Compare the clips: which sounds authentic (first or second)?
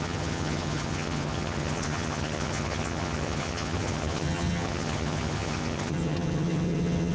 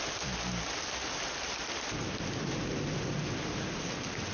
second